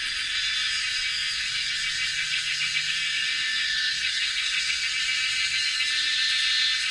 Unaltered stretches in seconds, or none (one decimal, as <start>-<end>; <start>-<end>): 0.0-1.1; 1.7-2.1; 4.9-5.4; 5.9-6.9